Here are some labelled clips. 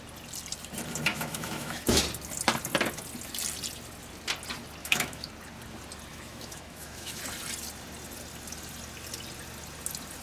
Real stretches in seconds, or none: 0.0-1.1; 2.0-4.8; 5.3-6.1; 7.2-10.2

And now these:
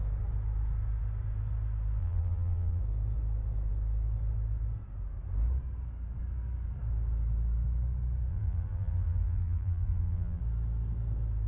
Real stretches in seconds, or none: 0.0-2.0; 2.8-8.3; 10.4-11.5

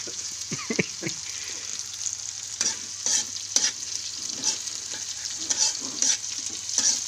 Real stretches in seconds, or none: 0.7-7.1

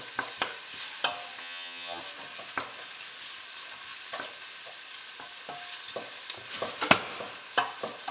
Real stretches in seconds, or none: 0.0-1.4; 2.0-8.1

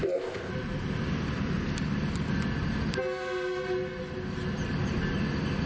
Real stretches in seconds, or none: 0.5-5.7

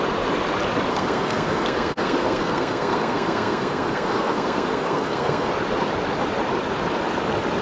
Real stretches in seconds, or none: 0.0-0.9; 5.5-7.6

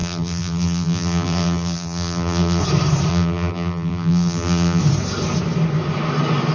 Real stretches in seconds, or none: 2.6-3.1; 4.8-6.5

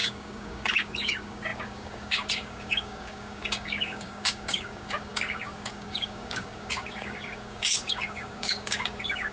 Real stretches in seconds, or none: none